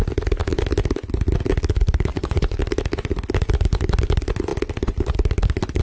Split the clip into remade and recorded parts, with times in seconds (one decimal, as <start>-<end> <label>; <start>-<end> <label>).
0.0-2.1 recorded; 2.1-2.6 remade; 2.6-5.8 recorded